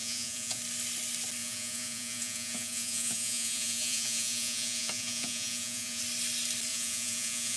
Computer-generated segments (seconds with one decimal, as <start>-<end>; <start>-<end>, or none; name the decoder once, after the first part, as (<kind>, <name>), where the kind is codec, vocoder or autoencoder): 0.0-0.6 (vocoder, Vocos); 1.4-6.0; 6.7-7.6